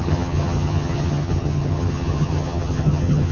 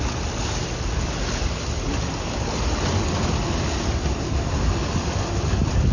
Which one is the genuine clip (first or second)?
second